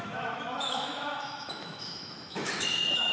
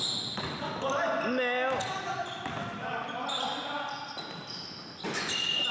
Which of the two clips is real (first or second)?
second